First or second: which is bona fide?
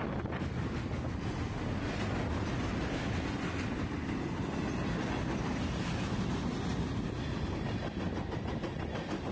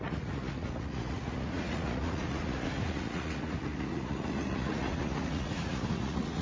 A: first